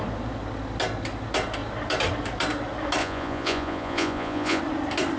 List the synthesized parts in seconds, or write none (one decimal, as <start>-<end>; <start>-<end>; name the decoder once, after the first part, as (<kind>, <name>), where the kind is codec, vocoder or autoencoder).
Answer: 3.0-4.6 (vocoder, Vocos)